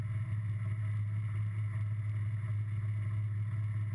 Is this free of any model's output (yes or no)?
yes